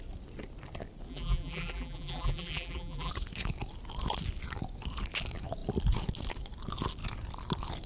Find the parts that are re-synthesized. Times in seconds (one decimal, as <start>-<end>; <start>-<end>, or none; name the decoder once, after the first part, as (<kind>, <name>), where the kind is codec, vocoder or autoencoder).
1.1-3.1 (vocoder, BigVGAN v2)